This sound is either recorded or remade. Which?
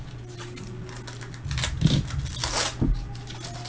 recorded